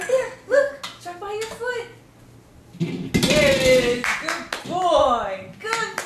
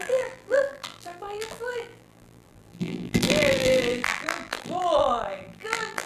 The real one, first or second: first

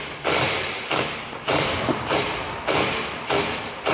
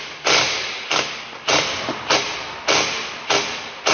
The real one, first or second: second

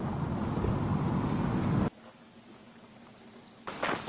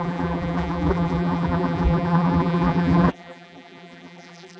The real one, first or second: first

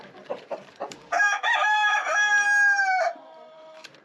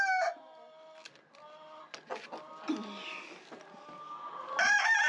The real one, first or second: second